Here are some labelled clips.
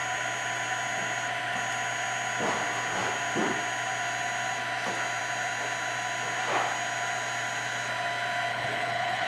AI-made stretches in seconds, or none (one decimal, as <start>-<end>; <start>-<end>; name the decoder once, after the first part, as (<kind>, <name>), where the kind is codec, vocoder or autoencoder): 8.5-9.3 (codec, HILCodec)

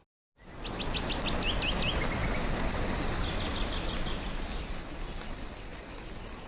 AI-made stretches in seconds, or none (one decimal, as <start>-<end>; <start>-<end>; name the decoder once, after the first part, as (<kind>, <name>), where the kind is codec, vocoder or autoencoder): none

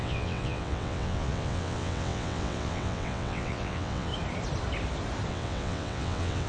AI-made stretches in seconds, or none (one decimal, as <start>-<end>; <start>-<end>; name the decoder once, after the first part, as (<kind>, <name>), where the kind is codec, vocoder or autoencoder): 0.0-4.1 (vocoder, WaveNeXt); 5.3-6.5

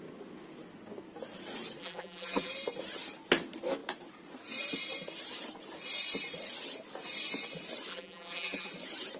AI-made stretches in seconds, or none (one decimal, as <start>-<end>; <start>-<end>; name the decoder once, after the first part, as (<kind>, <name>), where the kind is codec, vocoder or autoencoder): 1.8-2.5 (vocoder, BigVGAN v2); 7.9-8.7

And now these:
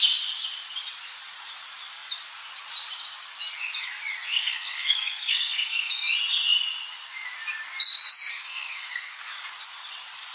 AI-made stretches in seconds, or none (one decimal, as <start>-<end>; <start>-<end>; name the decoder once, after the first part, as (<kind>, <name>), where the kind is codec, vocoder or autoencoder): 4.3-5.9 (codec, SNAC); 8.3-9.2

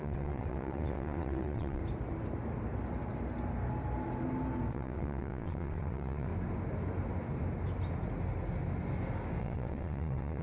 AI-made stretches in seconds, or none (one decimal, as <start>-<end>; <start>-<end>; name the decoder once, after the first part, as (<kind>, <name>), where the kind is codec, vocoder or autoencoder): 0.0-1.8 (vocoder, WaveNeXt); 4.7-6.3; 9.4-10.4